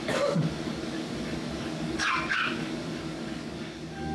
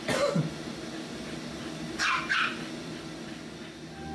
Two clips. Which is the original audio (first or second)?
second